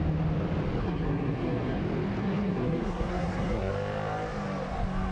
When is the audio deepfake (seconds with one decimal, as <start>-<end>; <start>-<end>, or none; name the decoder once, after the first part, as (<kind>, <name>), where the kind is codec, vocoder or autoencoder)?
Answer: 0.8-1.8 (codec, SNAC); 2.2-3.7